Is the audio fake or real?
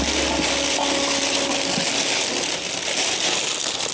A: real